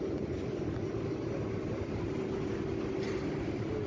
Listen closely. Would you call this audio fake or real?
real